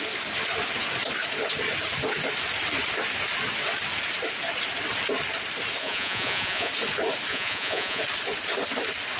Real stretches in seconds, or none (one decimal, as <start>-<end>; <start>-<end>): 0.0-5.8; 6.7-7.3; 8.0-9.2